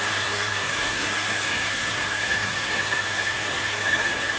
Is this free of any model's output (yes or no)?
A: no